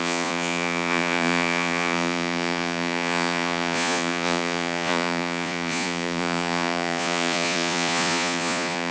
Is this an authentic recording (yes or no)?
no